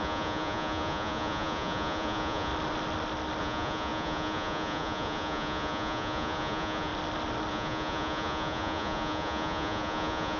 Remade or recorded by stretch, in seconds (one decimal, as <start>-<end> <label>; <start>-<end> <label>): 0.0-2.5 remade; 2.5-3.4 recorded; 3.4-6.9 remade; 6.9-7.5 recorded; 7.5-10.4 remade